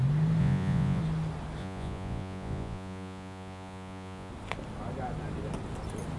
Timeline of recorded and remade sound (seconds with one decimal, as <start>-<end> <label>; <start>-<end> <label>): 0.0-0.4 recorded; 0.4-1.0 remade; 1.0-1.6 recorded; 1.6-4.3 remade; 4.3-6.2 recorded